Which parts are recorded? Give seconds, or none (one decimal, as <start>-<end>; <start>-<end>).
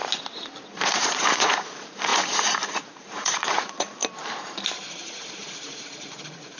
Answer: 0.0-0.7; 4.0-4.9